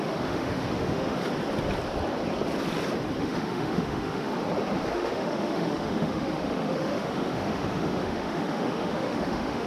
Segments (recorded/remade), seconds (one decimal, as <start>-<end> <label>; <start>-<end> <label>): 0.0-1.2 remade; 1.2-3.2 recorded; 3.2-4.3 remade; 4.3-4.9 recorded; 4.9-9.7 remade